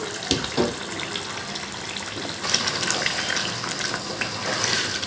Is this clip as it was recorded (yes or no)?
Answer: yes